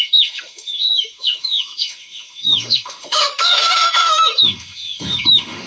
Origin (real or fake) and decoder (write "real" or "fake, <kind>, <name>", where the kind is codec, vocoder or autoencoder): fake, autoencoder, DAC-VAE